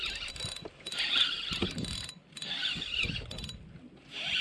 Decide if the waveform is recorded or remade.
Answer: recorded